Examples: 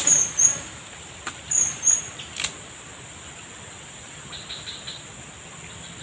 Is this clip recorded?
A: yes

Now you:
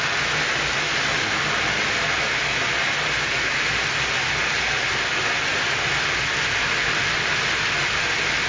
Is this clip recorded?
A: yes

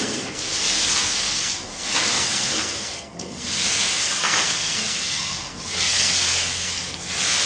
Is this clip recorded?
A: no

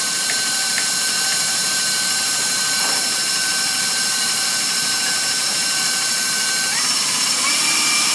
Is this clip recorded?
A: no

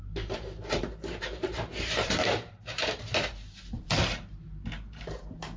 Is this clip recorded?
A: no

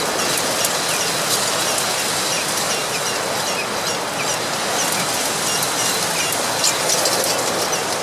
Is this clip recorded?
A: yes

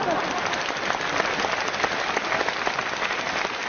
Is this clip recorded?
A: yes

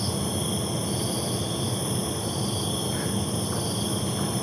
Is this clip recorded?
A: yes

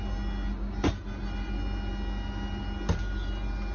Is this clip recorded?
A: yes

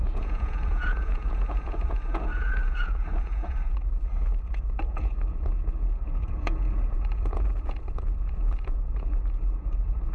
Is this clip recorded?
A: no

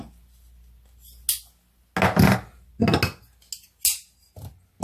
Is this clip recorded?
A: yes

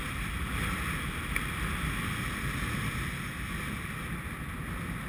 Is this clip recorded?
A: yes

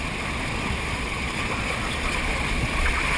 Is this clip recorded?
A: no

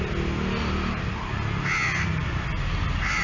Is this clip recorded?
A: yes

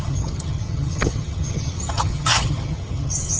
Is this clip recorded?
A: no